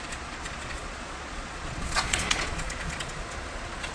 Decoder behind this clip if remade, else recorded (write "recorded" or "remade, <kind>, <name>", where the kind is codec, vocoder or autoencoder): remade, vocoder, Vocos